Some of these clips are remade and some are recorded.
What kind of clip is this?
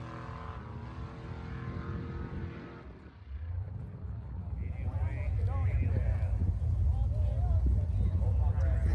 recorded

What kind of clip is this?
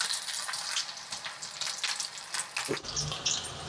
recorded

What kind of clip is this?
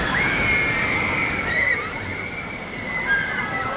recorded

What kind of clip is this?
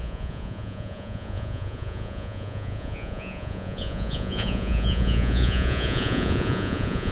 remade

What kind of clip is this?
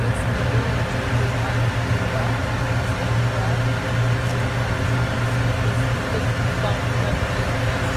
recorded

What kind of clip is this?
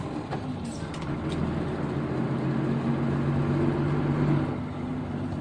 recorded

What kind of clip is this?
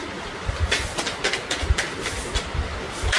recorded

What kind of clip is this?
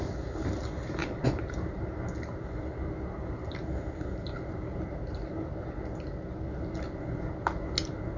recorded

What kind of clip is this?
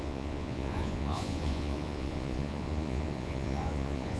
remade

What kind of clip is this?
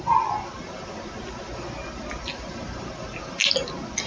recorded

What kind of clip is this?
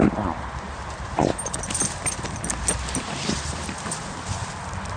recorded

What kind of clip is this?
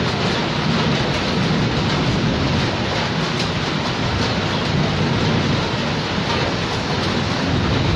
recorded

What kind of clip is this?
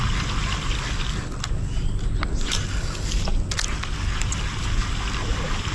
recorded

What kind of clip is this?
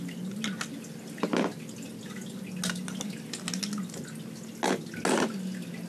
recorded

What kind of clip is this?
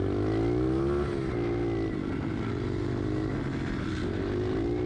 recorded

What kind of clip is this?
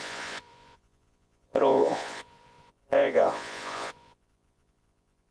remade